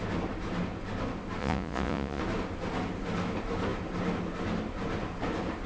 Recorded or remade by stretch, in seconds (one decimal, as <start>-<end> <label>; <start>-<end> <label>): 0.0-1.4 recorded; 1.4-2.2 remade; 2.2-5.7 recorded